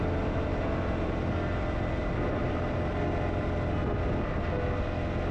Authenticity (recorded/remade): recorded